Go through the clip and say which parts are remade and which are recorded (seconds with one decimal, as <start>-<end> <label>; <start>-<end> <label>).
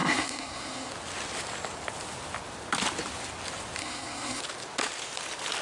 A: 0.0-0.9 remade; 0.9-3.8 recorded; 3.8-4.4 remade; 4.4-5.6 recorded